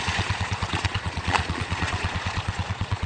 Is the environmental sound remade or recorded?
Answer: remade